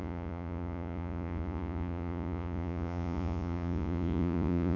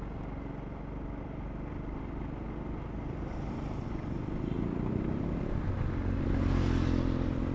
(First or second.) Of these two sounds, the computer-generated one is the first